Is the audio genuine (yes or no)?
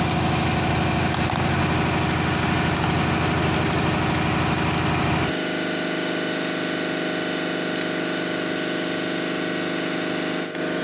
yes